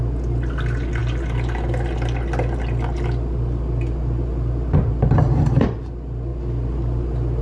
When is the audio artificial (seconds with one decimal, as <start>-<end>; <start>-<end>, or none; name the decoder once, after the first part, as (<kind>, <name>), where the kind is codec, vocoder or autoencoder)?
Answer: none